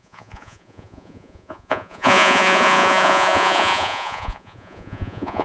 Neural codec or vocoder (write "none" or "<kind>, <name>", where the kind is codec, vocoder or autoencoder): vocoder, Vocos